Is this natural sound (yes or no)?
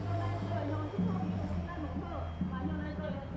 yes